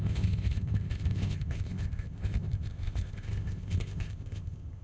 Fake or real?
fake